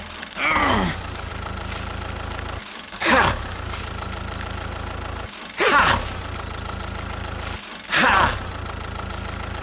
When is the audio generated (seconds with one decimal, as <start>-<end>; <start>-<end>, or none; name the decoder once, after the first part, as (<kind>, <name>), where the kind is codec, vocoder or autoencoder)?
0.6-1.3 (codec, DAC); 2.7-3.8